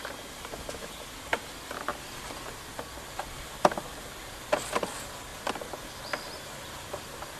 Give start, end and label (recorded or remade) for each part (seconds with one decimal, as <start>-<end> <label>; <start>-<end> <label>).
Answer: 0.0-7.4 recorded

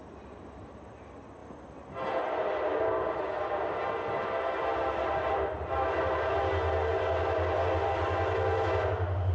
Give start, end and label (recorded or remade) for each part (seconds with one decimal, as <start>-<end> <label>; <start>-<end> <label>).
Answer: 0.0-9.3 recorded

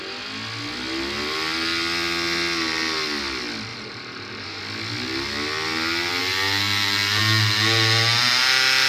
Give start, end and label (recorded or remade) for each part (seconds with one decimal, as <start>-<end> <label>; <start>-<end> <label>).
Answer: 0.0-3.7 recorded; 3.7-4.6 remade; 4.6-8.9 recorded

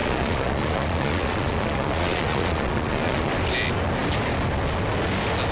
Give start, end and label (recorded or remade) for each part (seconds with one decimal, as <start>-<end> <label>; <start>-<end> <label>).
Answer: 0.0-3.3 remade; 3.3-5.5 recorded

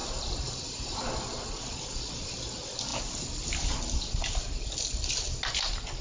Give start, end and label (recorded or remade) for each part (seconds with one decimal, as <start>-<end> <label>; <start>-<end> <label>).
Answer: 0.0-6.0 recorded

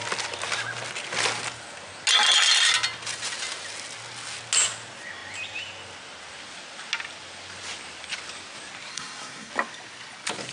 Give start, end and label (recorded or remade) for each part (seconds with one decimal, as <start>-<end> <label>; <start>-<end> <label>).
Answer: 0.0-8.9 recorded; 8.9-9.5 remade; 9.5-10.5 recorded

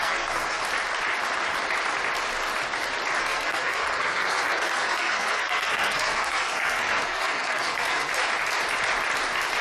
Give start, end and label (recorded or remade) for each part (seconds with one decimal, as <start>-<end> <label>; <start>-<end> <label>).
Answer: 0.0-0.6 remade; 0.6-3.2 recorded; 3.2-8.1 remade; 8.1-9.6 recorded

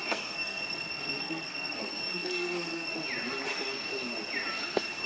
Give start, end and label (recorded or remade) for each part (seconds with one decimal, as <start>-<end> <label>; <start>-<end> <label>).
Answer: 0.0-2.9 remade; 2.9-3.5 recorded; 3.5-3.9 remade; 3.9-4.6 recorded; 4.6-5.1 remade